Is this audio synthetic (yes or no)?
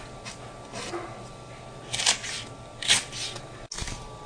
no